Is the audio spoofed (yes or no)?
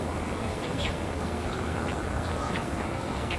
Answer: yes